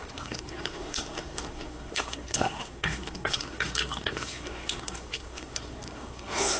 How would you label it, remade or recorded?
remade